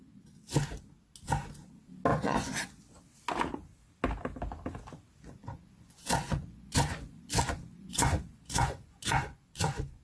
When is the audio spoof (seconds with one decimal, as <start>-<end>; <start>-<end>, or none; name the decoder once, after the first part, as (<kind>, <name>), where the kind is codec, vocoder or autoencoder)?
2.1-2.6 (vocoder, Vocos); 5.4-10.0